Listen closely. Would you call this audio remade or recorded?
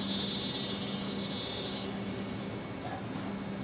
recorded